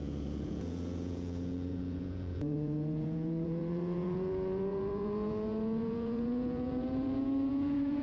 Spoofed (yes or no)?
yes